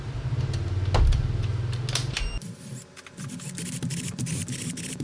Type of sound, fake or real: real